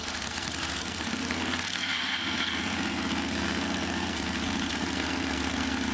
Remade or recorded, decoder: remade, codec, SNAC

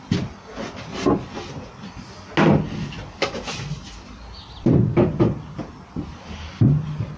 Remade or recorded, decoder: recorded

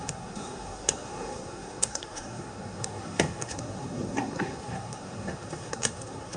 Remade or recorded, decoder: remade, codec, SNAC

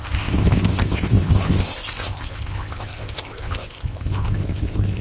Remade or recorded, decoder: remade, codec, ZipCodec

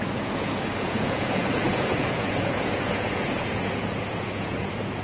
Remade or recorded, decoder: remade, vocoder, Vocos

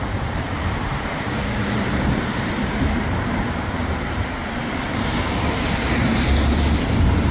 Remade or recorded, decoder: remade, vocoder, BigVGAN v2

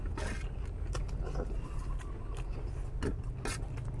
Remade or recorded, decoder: recorded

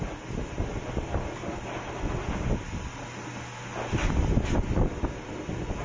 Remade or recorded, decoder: recorded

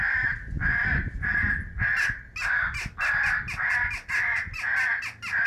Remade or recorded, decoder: recorded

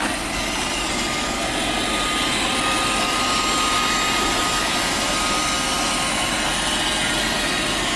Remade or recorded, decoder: recorded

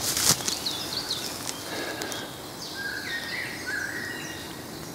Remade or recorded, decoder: recorded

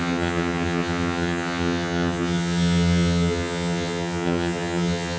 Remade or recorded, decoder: remade, vocoder, HiFi-GAN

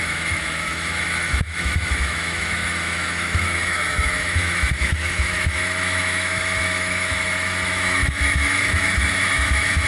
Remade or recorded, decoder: remade, autoencoder, DAC-VAE